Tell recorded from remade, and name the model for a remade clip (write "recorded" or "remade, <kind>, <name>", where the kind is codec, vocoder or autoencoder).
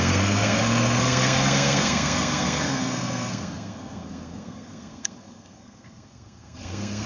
remade, codec, SNAC